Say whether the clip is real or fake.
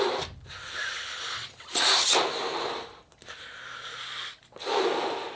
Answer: real